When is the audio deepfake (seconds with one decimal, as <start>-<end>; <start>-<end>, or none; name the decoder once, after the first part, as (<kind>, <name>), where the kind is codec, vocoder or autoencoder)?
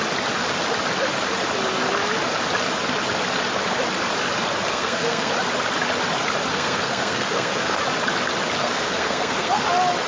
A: 4.7-5.3 (codec, SNAC); 6.5-7.8; 8.6-9.6